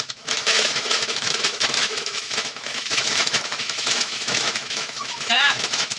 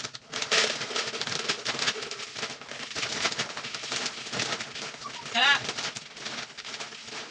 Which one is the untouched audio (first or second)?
second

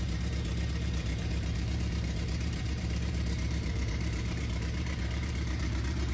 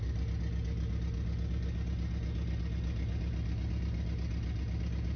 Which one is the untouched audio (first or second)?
second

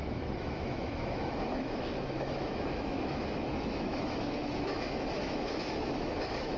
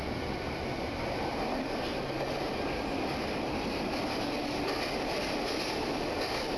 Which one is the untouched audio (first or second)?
second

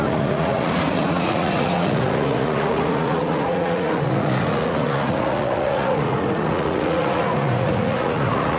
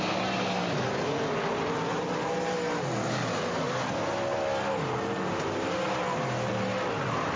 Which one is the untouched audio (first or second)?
second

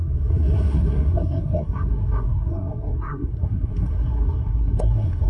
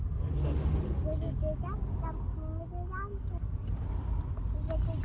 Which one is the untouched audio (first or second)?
second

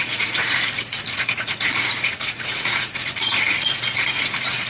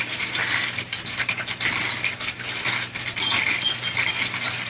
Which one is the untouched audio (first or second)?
second